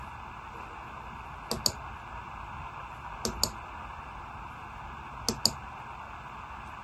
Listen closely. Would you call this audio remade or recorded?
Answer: recorded